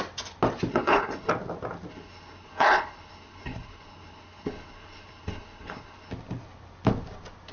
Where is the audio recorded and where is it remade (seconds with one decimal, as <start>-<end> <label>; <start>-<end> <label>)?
0.0-0.7 recorded; 0.7-1.3 remade; 1.3-1.9 recorded; 1.9-6.1 remade; 6.1-7.5 recorded